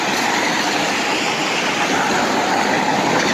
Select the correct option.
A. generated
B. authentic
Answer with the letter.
B